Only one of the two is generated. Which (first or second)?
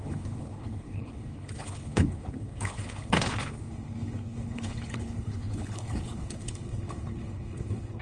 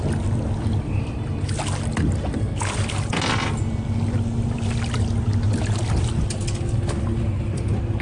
first